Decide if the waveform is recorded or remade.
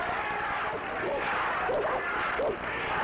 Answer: recorded